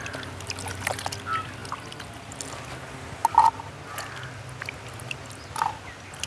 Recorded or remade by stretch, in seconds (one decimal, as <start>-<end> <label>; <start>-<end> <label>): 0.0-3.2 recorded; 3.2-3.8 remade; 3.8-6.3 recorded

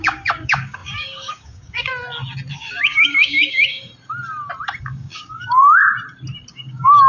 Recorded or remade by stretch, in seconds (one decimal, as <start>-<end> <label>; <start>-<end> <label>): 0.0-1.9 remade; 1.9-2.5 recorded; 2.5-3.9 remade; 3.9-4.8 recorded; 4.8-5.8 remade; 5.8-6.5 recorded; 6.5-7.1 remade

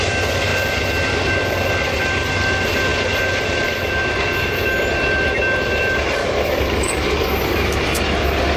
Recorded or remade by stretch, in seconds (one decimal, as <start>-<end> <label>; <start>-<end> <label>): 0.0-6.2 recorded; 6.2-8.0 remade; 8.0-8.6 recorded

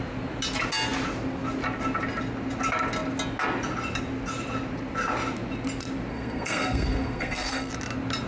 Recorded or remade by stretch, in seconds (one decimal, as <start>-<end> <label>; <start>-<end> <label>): 0.0-6.1 recorded; 6.1-7.7 remade; 7.7-8.3 recorded